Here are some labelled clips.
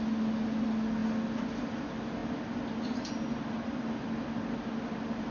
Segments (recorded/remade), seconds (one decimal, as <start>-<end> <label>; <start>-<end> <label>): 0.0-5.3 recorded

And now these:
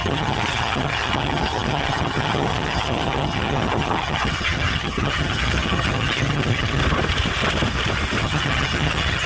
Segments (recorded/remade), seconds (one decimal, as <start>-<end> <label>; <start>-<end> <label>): 0.0-6.8 remade; 6.8-8.2 recorded; 8.2-9.3 remade

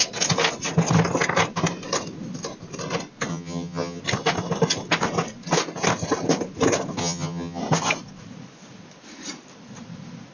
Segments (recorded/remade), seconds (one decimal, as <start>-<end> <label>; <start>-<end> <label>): 0.0-3.3 recorded; 3.3-4.0 remade; 4.0-7.0 recorded; 7.0-7.6 remade; 7.6-10.3 recorded

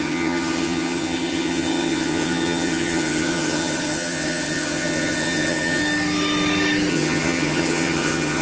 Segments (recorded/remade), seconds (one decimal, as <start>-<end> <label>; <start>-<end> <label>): 0.0-5.8 remade; 5.8-6.9 recorded; 6.9-8.4 remade